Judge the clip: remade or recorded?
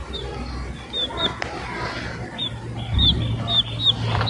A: recorded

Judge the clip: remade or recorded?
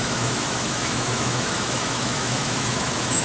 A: remade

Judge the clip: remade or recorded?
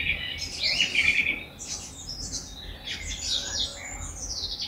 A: recorded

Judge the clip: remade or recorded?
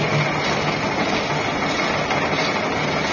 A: recorded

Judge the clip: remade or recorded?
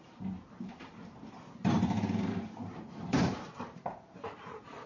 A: remade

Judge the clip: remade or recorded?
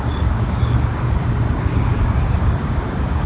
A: remade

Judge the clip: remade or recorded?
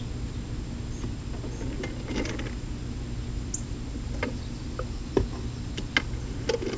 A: recorded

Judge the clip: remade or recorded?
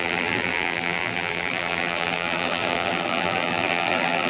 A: remade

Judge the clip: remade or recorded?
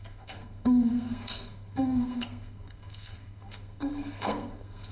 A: remade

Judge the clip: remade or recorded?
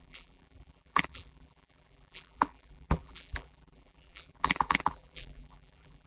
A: remade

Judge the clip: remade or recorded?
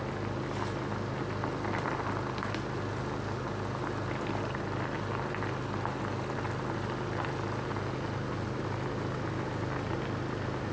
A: recorded